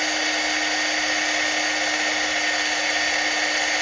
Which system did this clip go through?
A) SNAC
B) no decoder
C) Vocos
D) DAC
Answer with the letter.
B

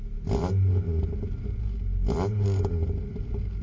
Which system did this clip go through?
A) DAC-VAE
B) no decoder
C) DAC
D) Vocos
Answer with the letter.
B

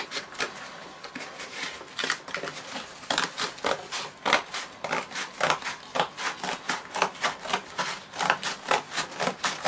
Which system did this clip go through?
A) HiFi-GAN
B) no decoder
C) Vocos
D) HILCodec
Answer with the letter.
B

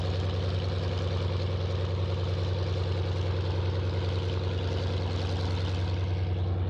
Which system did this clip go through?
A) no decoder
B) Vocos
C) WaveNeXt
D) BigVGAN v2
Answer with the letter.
A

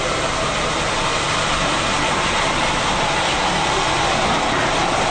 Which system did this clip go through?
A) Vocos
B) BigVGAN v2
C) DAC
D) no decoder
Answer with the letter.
D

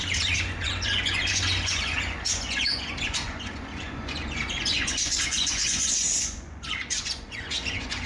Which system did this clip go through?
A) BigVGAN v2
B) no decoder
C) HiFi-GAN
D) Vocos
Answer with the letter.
D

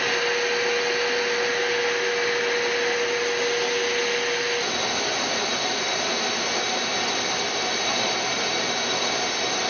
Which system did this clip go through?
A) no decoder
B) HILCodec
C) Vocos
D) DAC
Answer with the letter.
A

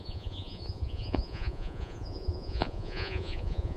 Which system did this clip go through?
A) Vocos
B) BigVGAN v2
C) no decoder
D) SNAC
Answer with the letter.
A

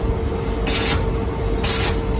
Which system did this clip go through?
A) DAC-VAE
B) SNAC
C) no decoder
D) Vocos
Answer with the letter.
C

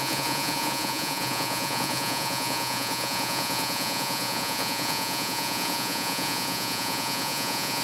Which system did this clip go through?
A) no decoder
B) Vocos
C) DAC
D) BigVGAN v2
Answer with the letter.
B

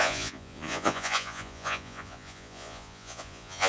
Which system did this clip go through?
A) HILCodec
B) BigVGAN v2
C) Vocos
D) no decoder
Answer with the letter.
C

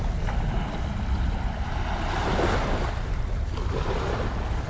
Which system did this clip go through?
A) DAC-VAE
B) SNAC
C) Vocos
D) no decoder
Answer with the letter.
D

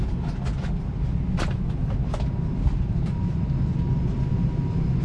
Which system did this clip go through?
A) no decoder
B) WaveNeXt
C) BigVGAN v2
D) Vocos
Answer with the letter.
A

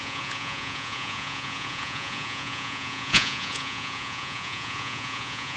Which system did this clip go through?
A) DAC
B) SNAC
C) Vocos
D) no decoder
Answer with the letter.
C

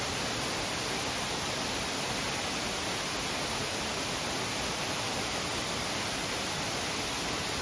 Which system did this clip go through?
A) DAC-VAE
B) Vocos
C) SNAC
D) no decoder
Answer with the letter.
D